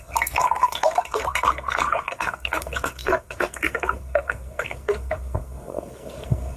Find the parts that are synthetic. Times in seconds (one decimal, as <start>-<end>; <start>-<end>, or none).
0.0-6.6